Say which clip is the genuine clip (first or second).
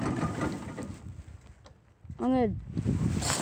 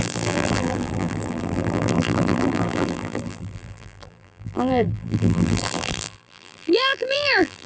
first